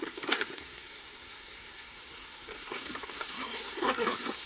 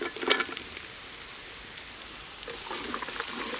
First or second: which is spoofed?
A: first